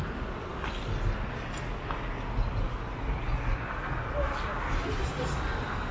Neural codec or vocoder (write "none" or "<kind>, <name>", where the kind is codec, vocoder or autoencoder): none